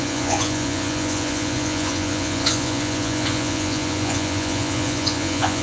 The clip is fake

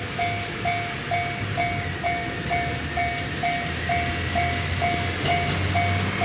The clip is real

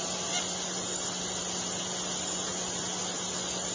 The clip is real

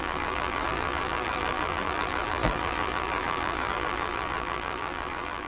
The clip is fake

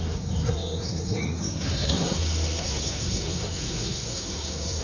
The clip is fake